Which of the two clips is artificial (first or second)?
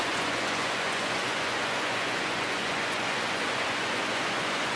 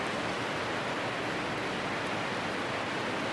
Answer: first